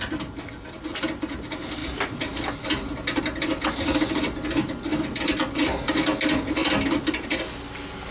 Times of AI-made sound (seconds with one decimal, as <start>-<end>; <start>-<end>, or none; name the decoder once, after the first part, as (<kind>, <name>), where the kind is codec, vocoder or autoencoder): none